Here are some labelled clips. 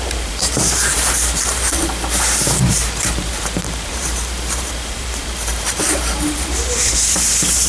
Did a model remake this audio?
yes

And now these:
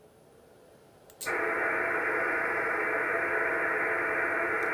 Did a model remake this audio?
no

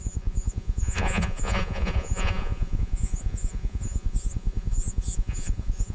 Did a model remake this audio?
yes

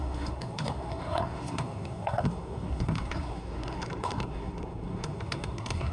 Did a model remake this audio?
yes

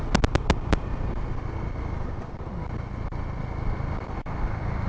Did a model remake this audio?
no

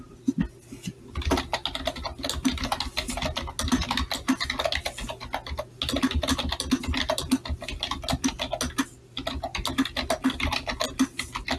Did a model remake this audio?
no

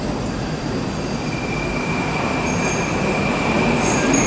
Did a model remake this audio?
no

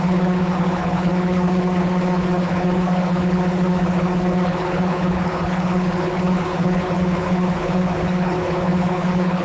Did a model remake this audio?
yes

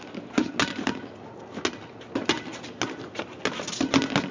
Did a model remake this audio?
no